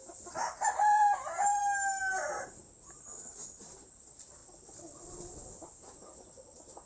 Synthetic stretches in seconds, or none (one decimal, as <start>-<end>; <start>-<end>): 0.6-1.6; 2.8-4.4; 5.6-6.9